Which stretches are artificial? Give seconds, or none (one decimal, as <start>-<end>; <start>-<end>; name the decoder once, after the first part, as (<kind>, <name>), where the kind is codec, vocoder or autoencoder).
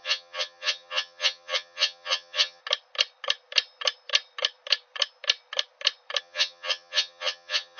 0.0-2.6 (vocoder, HiFi-GAN); 6.2-7.8